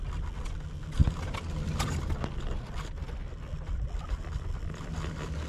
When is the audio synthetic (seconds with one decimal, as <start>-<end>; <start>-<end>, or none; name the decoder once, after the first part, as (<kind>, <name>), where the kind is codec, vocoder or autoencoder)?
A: none